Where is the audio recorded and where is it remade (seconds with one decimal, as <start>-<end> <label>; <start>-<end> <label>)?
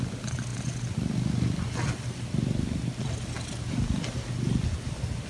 0.0-5.3 recorded